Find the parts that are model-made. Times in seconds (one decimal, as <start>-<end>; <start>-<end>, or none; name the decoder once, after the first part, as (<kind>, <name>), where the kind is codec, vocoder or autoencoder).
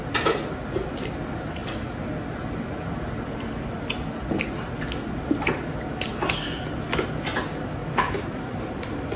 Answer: 7.8-8.4 (vocoder, BigVGAN v2)